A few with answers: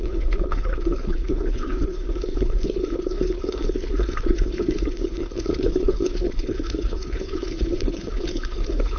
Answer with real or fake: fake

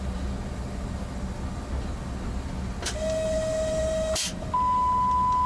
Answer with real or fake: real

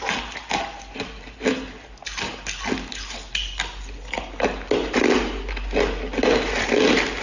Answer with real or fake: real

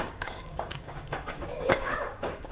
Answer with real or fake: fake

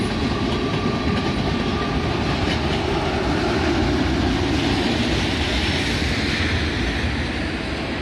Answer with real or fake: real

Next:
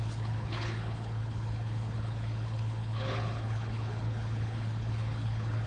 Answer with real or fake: fake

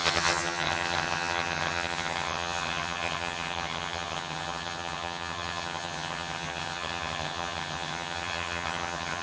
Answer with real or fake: fake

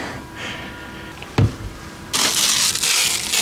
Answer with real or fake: real